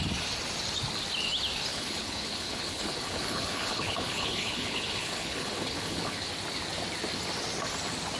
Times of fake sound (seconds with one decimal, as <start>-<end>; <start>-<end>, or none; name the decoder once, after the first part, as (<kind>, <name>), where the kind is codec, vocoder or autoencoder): 1.7-6.3 (codec, HILCodec)